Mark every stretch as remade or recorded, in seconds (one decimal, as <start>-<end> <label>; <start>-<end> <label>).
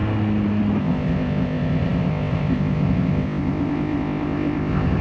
0.0-0.8 recorded; 0.8-5.0 remade